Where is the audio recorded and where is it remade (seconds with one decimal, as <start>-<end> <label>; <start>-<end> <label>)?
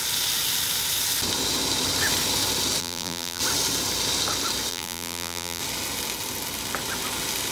0.0-2.8 recorded; 2.8-3.4 remade; 3.4-4.7 recorded; 4.7-5.6 remade; 5.6-7.5 recorded